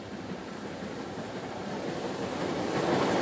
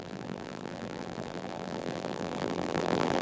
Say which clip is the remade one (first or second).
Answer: second